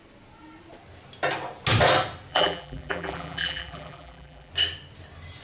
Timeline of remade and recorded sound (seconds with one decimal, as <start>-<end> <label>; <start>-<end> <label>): 0.0-2.3 recorded; 2.3-4.5 remade; 4.5-5.4 recorded